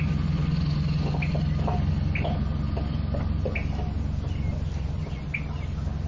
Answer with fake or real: real